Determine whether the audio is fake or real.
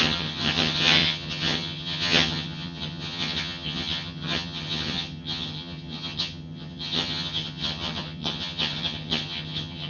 fake